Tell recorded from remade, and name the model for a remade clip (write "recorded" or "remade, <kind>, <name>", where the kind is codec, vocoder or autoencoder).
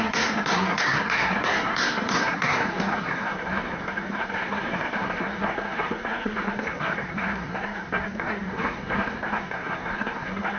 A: remade, codec, SNAC